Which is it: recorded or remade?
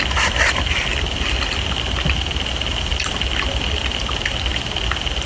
recorded